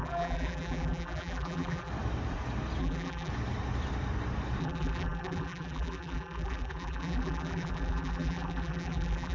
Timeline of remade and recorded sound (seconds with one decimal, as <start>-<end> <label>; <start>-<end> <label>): 0.0-1.9 remade; 1.9-2.8 recorded; 2.8-3.3 remade; 3.3-4.6 recorded; 4.6-9.3 remade